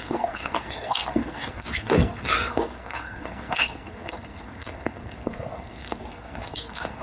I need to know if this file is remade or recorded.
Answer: remade